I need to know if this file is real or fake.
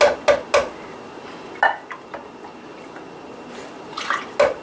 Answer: real